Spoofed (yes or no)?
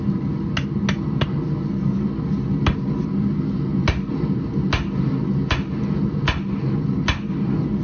no